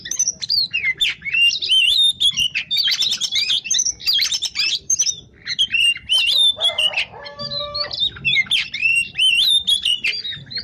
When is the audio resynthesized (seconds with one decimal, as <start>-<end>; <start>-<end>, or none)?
0.0-10.6